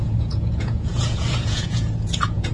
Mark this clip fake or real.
fake